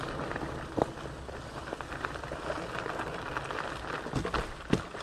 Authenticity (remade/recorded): recorded